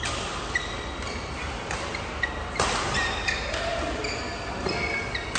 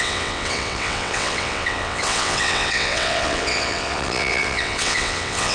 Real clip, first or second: first